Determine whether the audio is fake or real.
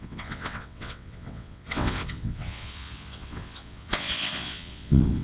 fake